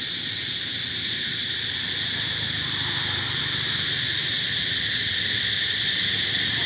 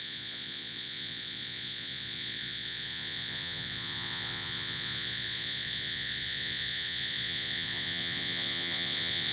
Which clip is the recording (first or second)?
first